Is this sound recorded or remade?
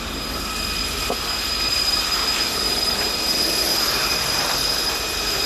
remade